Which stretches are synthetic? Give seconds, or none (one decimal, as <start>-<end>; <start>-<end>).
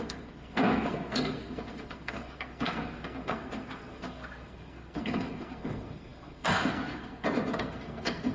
0.0-8.3